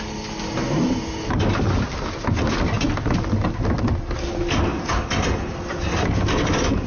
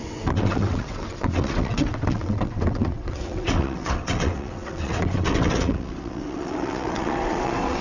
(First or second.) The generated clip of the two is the second